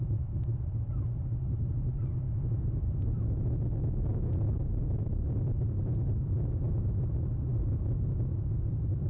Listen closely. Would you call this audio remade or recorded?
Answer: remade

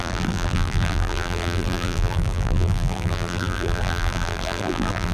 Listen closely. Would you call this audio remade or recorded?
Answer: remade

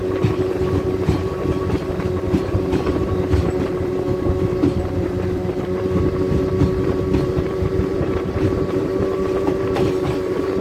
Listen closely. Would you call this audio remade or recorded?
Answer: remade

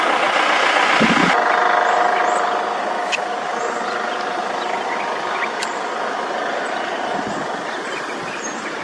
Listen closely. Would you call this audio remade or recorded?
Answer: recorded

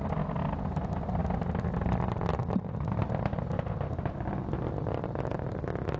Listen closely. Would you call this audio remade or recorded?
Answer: recorded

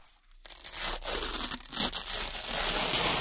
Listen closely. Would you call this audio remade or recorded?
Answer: recorded